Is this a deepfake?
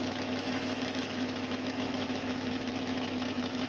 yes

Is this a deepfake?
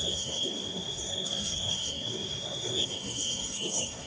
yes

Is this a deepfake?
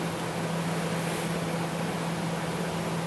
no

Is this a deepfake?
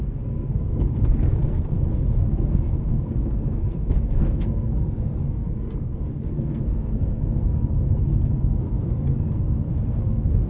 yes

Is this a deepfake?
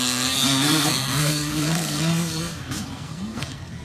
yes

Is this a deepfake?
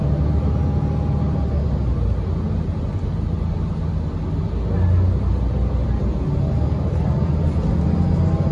no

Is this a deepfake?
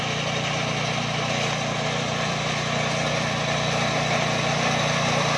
no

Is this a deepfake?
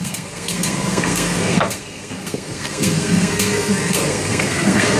yes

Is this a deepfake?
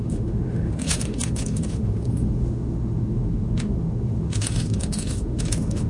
yes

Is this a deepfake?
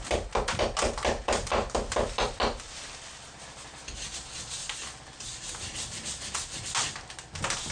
no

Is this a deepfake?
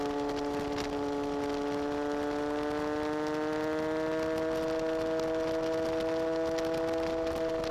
no